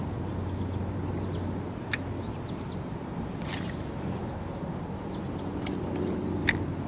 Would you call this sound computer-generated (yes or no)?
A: no